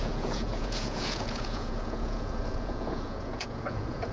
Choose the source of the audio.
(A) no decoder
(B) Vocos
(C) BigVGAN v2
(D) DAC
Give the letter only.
B